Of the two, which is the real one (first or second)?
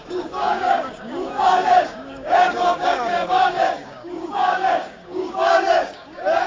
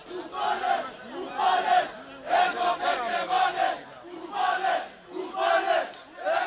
second